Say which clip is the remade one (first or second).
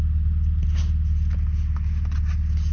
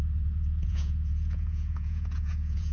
second